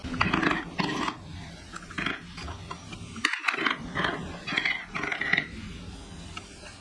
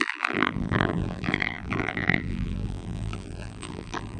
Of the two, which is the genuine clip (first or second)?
first